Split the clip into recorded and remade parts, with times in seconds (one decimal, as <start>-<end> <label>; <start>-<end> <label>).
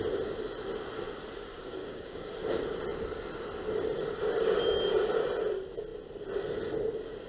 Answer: 0.0-1.5 recorded; 1.5-2.3 remade; 2.3-7.3 recorded